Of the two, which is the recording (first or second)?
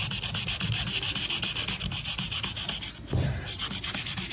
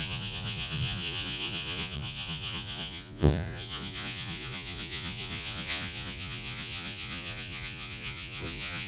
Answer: first